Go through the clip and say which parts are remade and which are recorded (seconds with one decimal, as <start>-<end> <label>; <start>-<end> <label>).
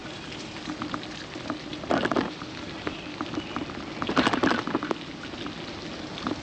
0.0-0.5 remade; 0.5-1.7 recorded; 1.7-3.2 remade; 3.2-6.4 recorded